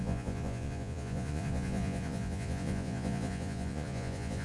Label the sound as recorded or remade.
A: remade